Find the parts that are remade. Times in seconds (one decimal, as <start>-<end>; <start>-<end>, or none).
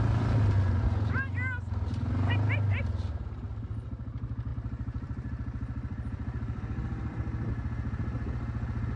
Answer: 4.5-7.5